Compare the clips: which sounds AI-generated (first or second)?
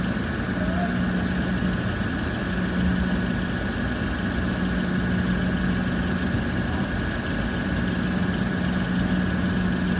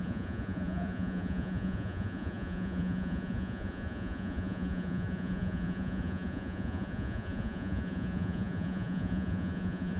second